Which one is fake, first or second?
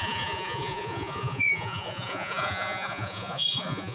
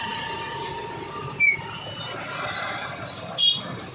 first